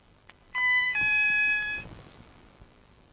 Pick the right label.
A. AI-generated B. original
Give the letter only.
A